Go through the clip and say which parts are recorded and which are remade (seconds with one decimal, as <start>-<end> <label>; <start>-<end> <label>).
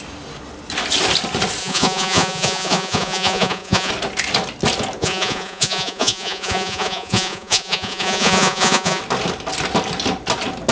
0.0-1.6 recorded; 1.6-3.9 remade; 3.9-5.0 recorded; 5.0-9.0 remade; 9.0-10.7 recorded